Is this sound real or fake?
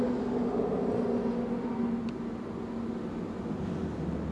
real